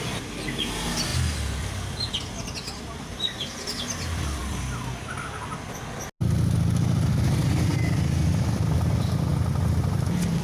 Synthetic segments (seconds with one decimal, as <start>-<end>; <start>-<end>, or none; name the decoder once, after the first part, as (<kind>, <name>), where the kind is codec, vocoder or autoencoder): none